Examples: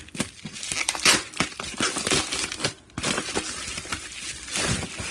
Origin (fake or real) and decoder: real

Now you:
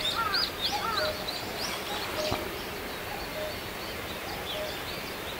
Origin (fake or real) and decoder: real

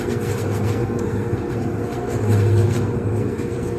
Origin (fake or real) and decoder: fake, codec, SNAC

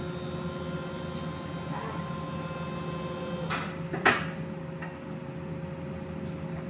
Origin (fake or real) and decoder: real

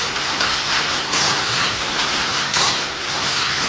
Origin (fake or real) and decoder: fake, codec, SNAC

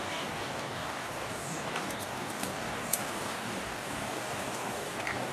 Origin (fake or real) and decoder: fake, codec, DAC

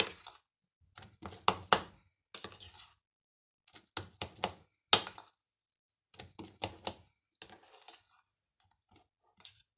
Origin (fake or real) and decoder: real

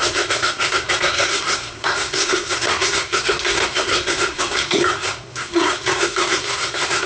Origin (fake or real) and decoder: fake, codec, SNAC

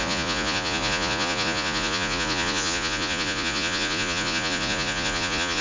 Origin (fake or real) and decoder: fake, vocoder, Vocos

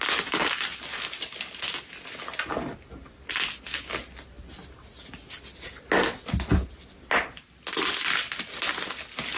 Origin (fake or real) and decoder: real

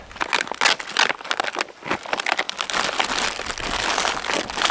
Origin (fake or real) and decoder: real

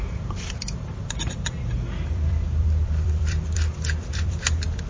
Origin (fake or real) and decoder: fake, vocoder, BigVGAN v2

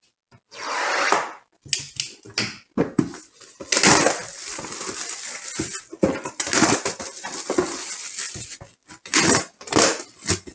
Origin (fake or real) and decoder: real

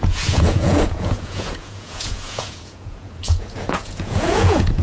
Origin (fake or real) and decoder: fake, vocoder, Vocos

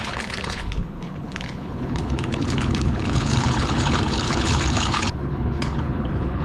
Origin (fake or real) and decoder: fake, codec, HILCodec